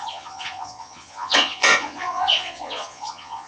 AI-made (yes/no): yes